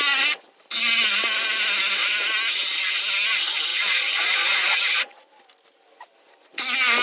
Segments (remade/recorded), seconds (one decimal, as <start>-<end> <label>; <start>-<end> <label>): 0.0-3.7 recorded; 3.7-5.3 remade; 5.3-7.0 recorded